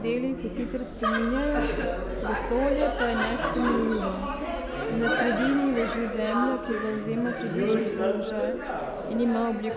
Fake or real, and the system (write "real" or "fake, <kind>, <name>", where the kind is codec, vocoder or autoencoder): real